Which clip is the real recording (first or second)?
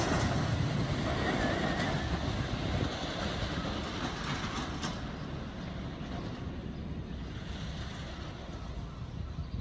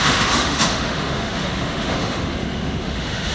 first